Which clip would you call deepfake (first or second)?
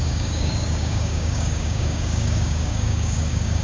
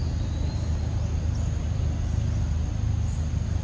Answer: first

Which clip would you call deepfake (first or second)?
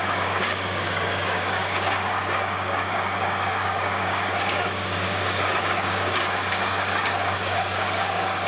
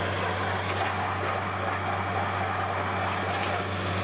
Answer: first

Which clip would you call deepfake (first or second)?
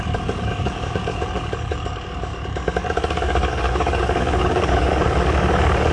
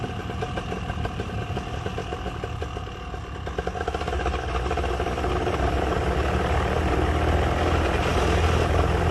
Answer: first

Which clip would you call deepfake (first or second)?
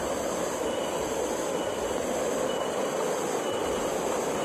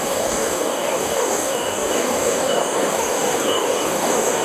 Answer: second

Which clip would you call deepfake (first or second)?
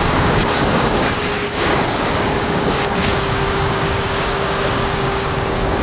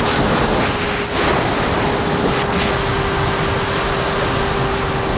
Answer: first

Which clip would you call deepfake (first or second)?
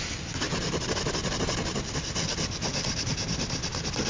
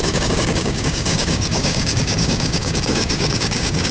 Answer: second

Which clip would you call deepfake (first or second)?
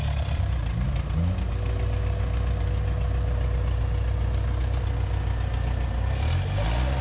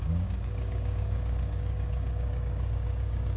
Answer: second